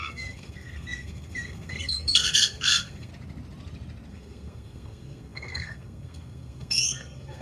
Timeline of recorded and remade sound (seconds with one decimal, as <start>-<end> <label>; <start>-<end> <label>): 0.0-3.1 remade; 3.1-4.1 recorded; 4.1-7.4 remade